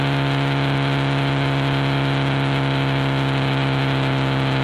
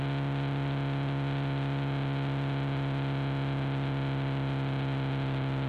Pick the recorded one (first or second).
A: second